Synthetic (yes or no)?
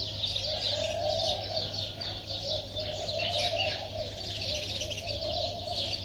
no